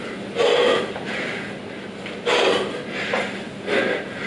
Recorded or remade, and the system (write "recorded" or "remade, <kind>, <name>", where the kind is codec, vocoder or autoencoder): recorded